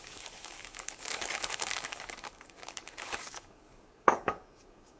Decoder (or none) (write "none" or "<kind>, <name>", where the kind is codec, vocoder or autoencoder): codec, DAC